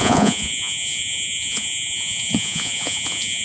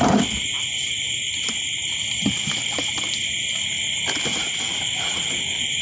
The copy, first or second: first